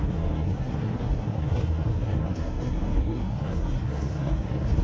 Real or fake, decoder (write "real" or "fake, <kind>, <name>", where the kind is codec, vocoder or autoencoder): fake, codec, SNAC